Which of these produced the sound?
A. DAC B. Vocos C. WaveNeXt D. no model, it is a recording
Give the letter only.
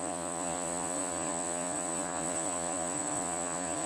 B